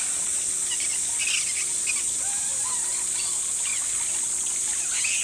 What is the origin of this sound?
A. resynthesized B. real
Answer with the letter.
B